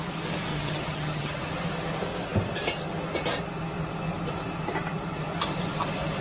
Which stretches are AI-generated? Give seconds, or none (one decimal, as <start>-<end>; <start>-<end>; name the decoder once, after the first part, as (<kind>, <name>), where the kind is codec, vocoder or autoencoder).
0.5-1.4 (vocoder, HiFi-GAN)